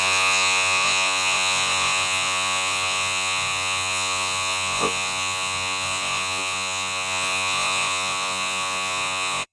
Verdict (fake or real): fake